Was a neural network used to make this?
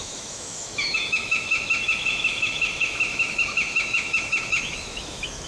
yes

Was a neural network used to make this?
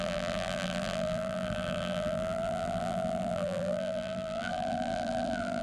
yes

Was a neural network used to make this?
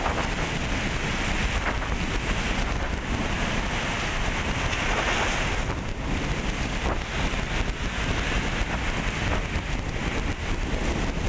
no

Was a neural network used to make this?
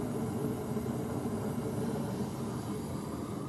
no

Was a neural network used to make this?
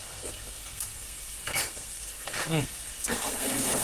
yes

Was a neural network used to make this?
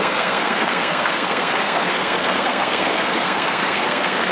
yes